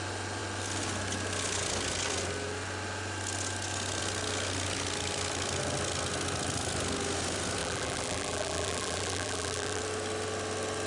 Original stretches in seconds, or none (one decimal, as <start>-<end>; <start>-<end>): 0.0-7.6; 9.8-10.9